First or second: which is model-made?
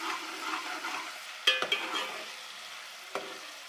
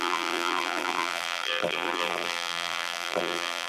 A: second